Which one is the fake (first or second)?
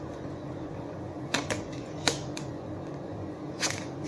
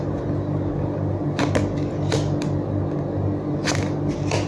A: first